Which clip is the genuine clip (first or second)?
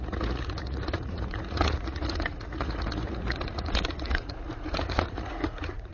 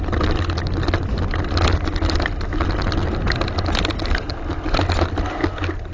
second